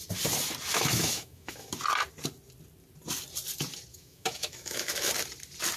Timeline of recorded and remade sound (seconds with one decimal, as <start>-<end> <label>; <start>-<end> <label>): 0.0-0.7 recorded; 0.7-1.7 remade; 1.7-3.9 recorded; 3.9-5.1 remade; 5.1-5.8 recorded